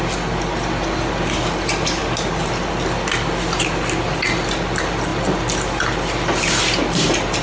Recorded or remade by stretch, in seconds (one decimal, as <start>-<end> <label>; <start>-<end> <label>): 0.0-7.4 recorded